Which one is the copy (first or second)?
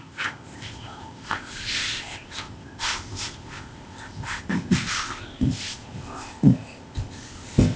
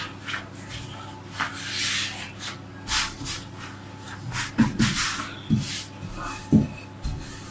first